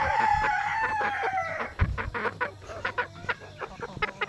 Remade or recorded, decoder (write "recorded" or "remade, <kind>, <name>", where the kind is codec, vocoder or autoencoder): recorded